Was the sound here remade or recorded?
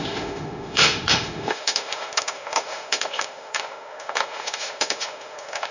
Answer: remade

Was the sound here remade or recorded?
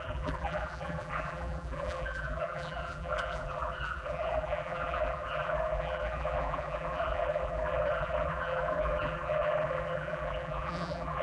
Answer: remade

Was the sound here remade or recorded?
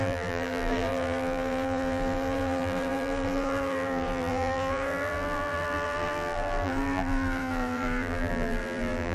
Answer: remade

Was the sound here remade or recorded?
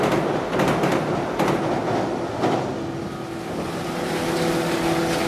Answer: recorded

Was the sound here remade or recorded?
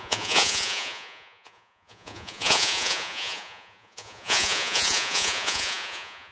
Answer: remade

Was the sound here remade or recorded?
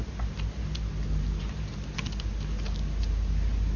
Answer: recorded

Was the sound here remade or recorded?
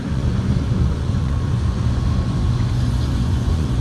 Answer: remade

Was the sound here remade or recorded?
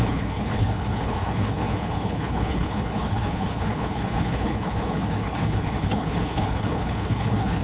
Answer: remade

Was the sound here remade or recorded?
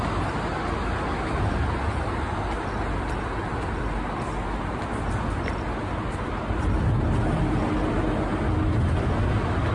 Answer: recorded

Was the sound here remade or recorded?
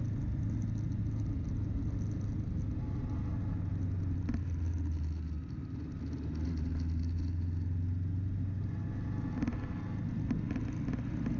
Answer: recorded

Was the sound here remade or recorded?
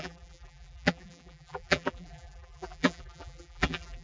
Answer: remade